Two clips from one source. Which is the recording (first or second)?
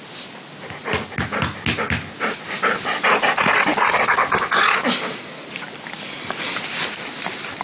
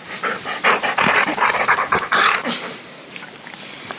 first